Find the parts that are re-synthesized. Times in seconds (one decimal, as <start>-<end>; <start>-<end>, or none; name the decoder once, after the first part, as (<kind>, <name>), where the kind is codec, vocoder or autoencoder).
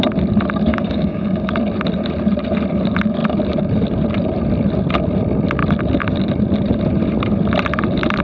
0.7-1.5 (codec, DAC)